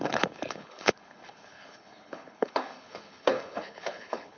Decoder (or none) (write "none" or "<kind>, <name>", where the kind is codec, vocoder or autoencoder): codec, HILCodec